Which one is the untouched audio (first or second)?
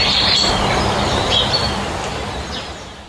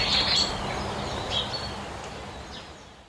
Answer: second